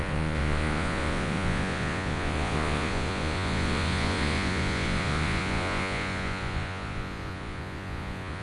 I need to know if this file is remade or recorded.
remade